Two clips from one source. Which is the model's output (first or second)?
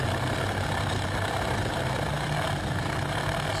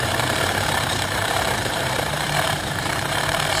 second